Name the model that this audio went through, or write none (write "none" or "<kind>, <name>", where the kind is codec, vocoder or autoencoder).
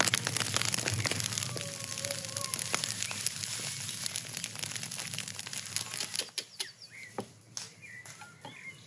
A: none